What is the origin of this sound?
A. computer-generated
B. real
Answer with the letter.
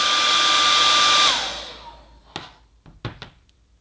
B